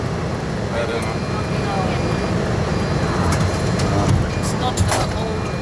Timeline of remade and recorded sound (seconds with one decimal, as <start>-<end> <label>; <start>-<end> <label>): 0.0-5.6 recorded